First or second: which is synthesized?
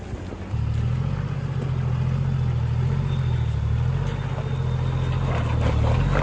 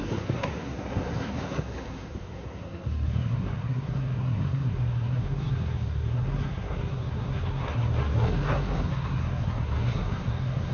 second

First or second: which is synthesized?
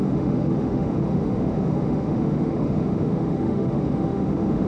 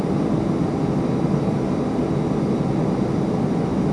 first